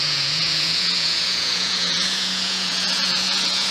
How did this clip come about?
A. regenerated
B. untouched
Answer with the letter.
A